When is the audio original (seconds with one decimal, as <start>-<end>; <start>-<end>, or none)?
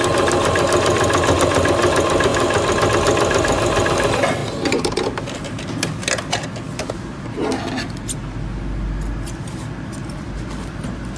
0.0-11.2